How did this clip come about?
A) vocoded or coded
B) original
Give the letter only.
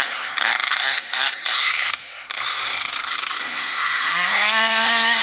A